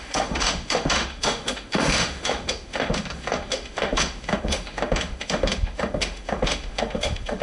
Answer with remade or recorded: remade